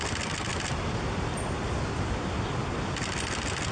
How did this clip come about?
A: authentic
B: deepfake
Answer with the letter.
A